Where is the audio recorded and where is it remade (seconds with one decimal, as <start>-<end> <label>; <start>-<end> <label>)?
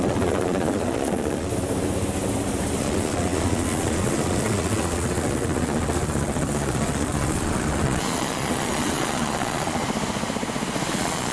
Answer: 0.0-1.5 remade; 1.5-2.8 recorded; 2.8-9.8 remade; 9.8-10.9 recorded; 10.9-11.3 remade